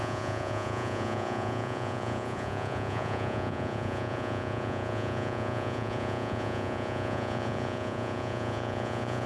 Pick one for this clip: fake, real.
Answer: fake